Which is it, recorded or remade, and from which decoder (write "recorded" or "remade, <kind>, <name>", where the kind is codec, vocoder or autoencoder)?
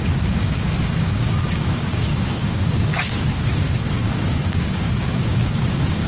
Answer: remade, codec, DAC